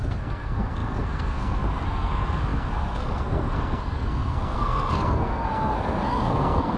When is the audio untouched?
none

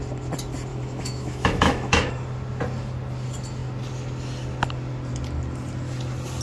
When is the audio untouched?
0.0-0.7; 2.1-6.4

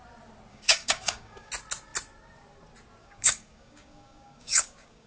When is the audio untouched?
0.0-0.5; 1.5-3.0